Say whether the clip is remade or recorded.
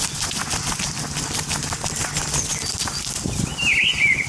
remade